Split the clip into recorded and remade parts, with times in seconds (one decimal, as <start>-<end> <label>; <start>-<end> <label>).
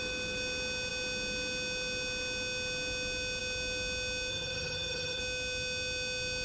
0.0-4.3 recorded; 4.3-5.2 remade; 5.2-6.4 recorded